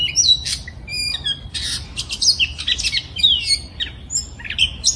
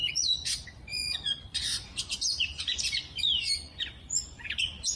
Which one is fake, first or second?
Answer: second